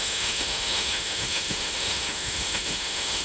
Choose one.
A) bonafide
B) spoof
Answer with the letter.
B